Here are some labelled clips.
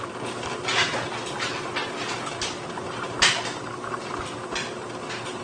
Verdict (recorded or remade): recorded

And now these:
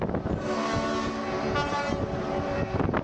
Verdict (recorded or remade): recorded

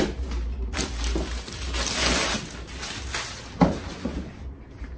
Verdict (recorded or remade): recorded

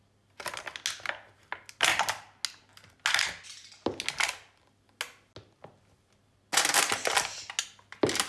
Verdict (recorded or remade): recorded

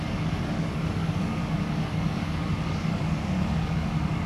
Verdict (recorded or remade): remade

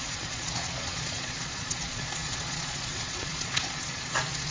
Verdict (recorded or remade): remade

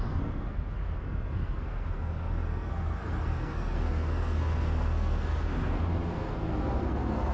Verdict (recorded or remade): remade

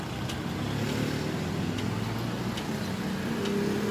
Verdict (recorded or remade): recorded